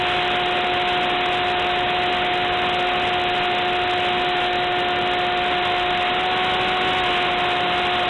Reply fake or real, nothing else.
real